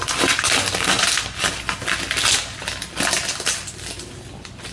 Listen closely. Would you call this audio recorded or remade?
recorded